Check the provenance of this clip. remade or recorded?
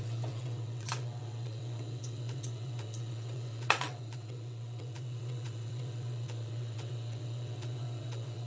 remade